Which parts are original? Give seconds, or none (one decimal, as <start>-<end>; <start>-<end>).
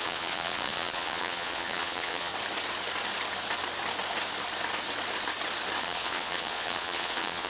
2.3-5.8